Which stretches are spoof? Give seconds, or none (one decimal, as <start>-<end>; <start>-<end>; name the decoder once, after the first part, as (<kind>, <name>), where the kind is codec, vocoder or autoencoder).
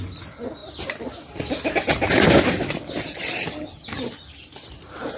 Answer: none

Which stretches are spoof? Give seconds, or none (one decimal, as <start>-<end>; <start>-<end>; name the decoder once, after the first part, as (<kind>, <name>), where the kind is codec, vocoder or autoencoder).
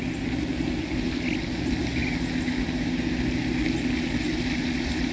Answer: none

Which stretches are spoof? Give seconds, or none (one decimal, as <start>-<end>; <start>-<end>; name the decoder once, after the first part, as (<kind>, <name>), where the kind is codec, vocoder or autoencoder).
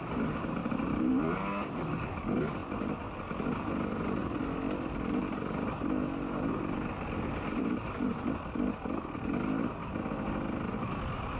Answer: 0.6-1.1 (vocoder, BigVGAN v2)